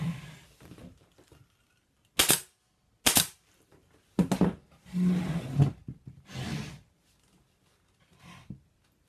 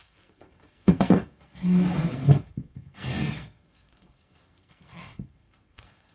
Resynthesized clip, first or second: second